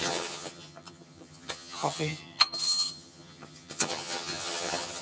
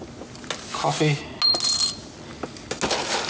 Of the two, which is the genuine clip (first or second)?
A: second